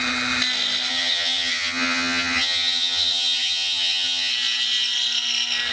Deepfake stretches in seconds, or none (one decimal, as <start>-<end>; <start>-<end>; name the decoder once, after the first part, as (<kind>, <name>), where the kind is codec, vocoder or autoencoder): 0.9-4.3 (vocoder, HiFi-GAN)